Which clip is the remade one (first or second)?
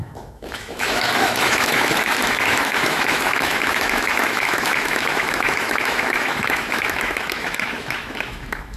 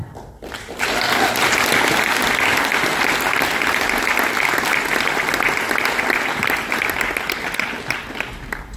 first